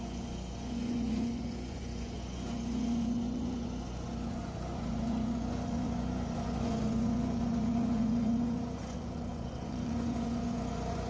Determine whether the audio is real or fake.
fake